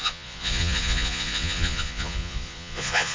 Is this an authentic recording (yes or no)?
no